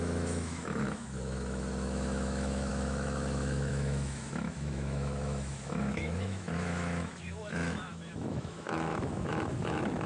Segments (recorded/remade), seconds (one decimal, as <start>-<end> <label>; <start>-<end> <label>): 0.0-10.1 remade